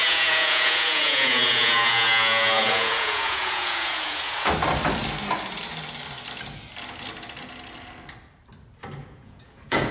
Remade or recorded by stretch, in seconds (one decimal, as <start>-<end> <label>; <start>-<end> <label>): 0.0-4.5 remade; 4.5-9.0 recorded; 9.0-9.9 remade